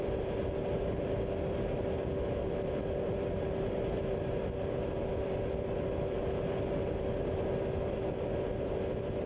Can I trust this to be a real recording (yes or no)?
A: yes